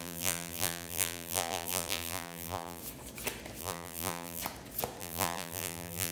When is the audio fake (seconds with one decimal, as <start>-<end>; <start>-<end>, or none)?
0.0-2.8; 3.6-4.4; 5.0-6.1